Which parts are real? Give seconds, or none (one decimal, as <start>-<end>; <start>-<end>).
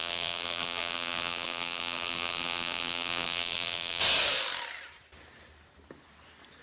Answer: 4.0-6.6